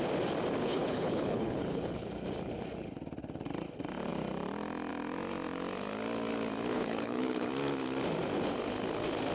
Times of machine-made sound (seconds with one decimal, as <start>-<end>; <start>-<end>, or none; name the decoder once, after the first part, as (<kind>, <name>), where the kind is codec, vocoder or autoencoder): 0.6-2.1 (codec, HILCodec); 6.7-7.5